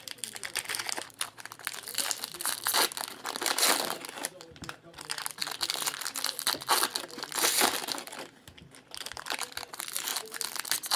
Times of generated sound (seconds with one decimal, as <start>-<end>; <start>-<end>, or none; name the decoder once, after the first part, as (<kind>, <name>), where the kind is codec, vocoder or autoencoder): 0.0-1.9 (vocoder, BigVGAN v2); 4.6-5.4; 7.2-10.1